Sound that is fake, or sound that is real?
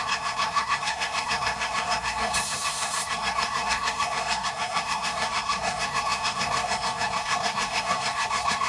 fake